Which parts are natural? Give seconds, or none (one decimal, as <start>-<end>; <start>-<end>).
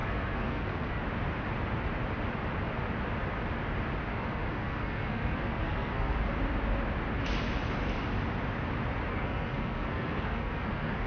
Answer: 1.0-4.1; 6.2-9.1